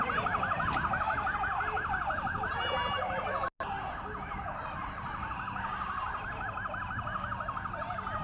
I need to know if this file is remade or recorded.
recorded